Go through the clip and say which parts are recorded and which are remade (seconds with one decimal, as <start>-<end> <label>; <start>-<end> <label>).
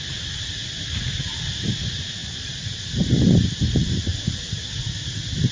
0.0-2.2 remade; 2.2-3.6 recorded; 3.6-5.5 remade